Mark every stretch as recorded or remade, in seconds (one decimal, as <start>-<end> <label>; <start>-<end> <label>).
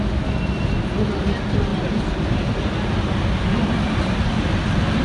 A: 0.0-5.0 recorded